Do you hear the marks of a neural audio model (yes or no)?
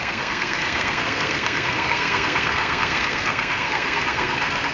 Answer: yes